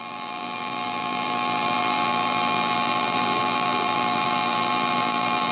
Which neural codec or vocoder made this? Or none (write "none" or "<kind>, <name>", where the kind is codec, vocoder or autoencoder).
vocoder, BigVGAN v2